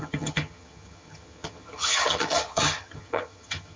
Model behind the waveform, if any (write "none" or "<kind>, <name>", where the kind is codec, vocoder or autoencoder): vocoder, HiFi-GAN